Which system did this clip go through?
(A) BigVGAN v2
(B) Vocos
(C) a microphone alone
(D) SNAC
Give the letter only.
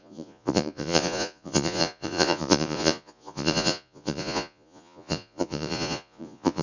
B